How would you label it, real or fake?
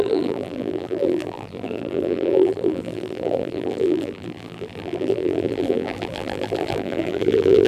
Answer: fake